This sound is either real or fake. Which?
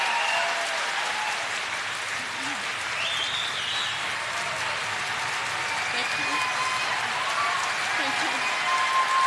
real